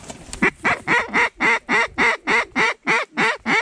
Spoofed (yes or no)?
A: yes